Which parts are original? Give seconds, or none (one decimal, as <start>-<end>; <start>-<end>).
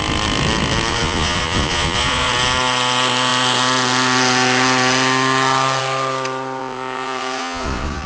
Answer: 0.0-0.9; 2.3-6.6